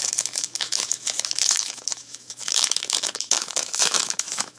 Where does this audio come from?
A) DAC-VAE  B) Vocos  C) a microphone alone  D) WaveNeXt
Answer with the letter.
A